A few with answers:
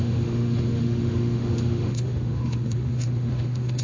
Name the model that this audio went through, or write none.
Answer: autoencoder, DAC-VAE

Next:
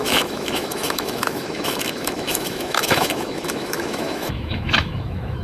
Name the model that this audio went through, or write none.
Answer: autoencoder, DAC-VAE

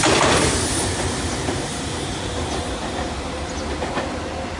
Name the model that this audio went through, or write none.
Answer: none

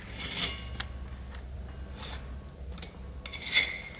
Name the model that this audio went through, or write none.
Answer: none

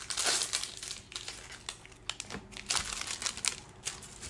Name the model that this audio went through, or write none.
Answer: none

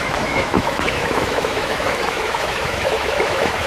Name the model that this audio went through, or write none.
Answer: autoencoder, DAC-VAE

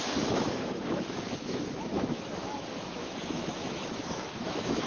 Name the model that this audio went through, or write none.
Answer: autoencoder, DAC-VAE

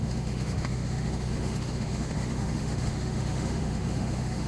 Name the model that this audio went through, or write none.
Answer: autoencoder, DAC-VAE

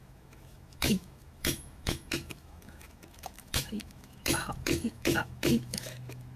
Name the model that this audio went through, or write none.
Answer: autoencoder, DAC-VAE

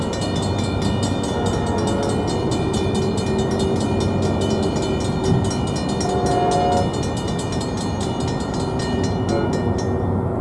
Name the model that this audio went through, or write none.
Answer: none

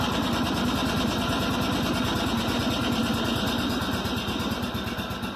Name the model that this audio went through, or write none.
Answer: none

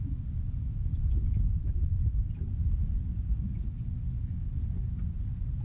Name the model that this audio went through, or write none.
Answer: none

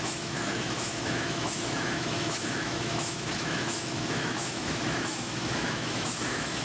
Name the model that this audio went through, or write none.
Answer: autoencoder, DAC-VAE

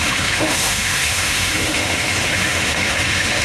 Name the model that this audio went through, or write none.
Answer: autoencoder, DAC-VAE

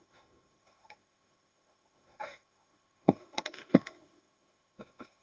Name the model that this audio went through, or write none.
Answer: autoencoder, DAC-VAE